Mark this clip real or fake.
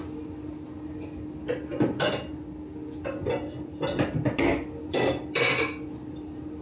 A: real